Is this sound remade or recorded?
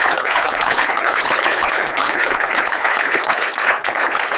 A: remade